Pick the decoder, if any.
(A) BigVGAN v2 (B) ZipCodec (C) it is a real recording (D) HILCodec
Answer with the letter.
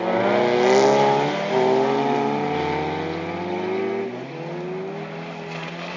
C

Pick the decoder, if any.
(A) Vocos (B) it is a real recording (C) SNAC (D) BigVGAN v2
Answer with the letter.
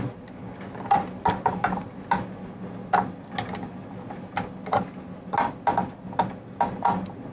B